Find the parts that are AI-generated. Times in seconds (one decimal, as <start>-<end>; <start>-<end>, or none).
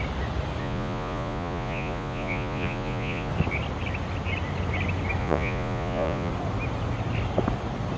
0.6-3.3; 5.2-6.3